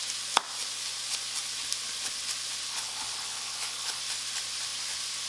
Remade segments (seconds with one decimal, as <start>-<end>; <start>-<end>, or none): 2.7-4.0